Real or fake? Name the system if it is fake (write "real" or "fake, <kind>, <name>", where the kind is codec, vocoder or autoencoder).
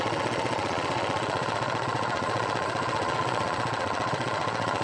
fake, vocoder, Vocos